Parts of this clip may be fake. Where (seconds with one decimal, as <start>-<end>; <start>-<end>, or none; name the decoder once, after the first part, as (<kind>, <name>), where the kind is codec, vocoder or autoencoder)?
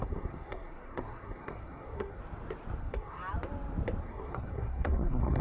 0.0-2.2 (codec, SNAC); 2.8-3.2; 4.0-5.4